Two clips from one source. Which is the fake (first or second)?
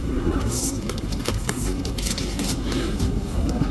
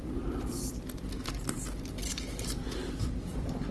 first